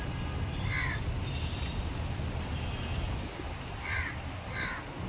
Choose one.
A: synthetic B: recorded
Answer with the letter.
B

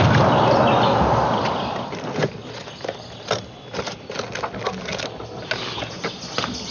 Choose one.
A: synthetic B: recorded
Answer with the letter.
B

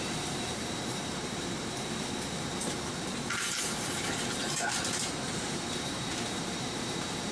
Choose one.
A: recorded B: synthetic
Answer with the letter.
B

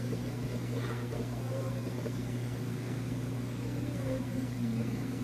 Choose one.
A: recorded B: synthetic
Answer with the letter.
B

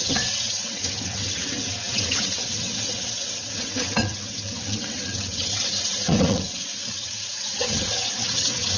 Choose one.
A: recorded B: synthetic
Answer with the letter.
B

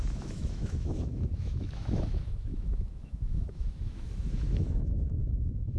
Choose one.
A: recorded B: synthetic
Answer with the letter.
B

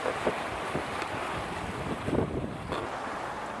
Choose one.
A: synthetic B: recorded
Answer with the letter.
B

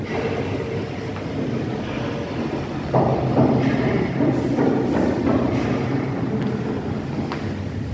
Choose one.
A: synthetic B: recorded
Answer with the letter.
B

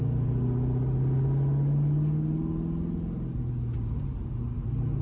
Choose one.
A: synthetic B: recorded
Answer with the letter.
B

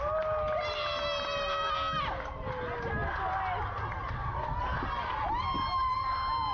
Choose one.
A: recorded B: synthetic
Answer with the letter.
A